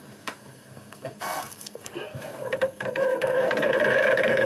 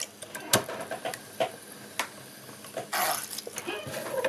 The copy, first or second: first